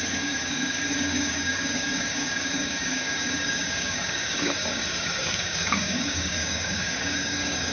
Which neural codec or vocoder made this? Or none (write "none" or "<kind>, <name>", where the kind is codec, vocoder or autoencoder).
codec, DAC